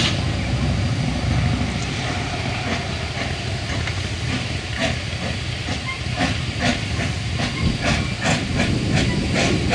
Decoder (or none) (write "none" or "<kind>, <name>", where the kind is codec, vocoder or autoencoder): none